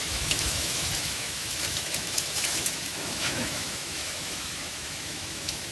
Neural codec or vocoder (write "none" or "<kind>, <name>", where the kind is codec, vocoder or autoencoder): autoencoder, DAC-VAE